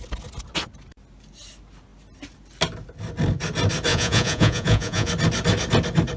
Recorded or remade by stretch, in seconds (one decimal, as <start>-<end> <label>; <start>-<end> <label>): 0.0-3.9 recorded; 3.9-5.1 remade; 5.1-6.2 recorded